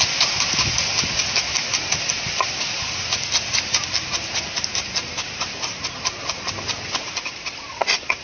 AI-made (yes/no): no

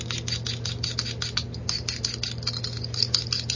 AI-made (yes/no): no